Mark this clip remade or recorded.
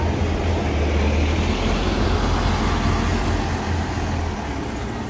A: recorded